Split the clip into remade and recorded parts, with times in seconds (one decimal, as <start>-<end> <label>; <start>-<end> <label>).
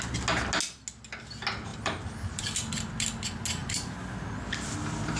0.0-1.7 recorded; 1.7-2.7 remade; 2.7-3.6 recorded; 3.6-5.2 remade